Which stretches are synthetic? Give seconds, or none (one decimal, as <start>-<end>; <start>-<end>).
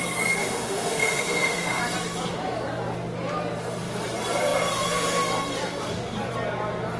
0.4-1.8